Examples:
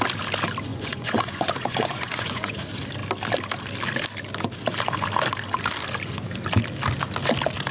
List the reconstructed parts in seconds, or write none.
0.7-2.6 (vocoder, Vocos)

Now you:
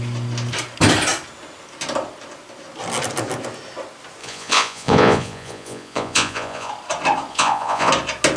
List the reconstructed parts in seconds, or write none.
4.2-6.7 (vocoder, Vocos); 7.3-7.9

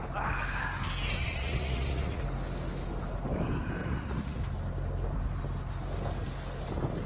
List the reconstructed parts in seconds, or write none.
1.2-2.2 (vocoder, Vocos); 3.8-4.4

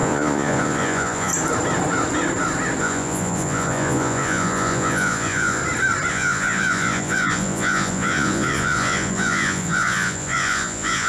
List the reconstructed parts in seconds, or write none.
0.0-1.3 (vocoder, Vocos); 2.8-5.6; 6.1-11.1

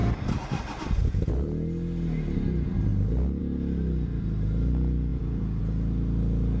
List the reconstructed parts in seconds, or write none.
5.1-5.6 (vocoder, Vocos)

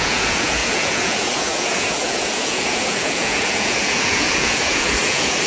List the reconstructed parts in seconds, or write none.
0.0-5.5 (vocoder, Vocos)

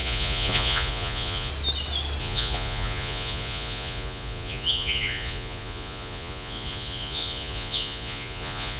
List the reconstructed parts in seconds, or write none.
0.0-1.5 (vocoder, Vocos); 2.2-8.8